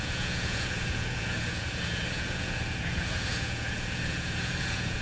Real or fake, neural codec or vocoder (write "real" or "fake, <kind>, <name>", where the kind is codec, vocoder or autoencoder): fake, vocoder, Vocos